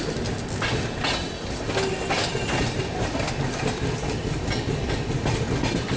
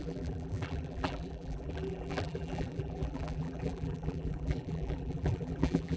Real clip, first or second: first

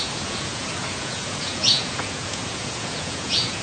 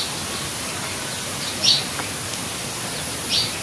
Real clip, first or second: second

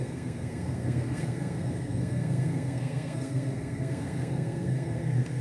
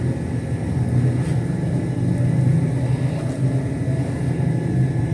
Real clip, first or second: second